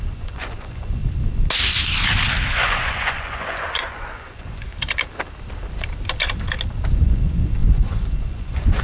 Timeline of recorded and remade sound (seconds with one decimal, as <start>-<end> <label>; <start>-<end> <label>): 0.0-1.0 remade; 1.0-2.5 recorded; 2.5-4.7 remade; 4.7-6.9 recorded; 6.9-8.8 remade